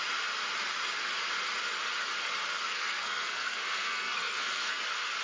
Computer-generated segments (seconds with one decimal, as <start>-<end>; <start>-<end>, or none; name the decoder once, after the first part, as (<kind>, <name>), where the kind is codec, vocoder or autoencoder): 2.7-4.8 (codec, SNAC)